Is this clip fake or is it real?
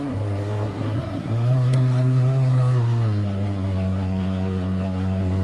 fake